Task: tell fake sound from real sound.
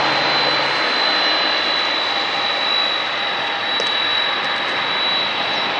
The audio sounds real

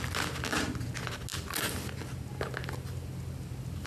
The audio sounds real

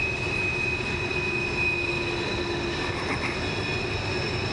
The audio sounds real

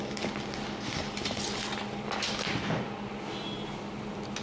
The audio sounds real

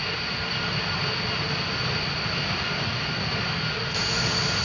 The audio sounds real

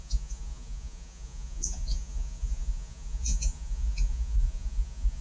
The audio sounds fake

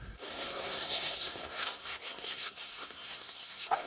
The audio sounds fake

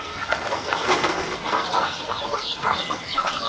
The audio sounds fake